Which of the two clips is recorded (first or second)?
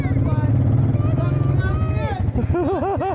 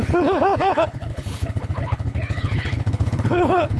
first